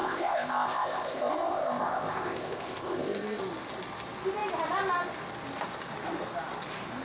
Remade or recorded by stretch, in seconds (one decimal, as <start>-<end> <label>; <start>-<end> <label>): 0.0-3.4 remade; 3.4-7.0 recorded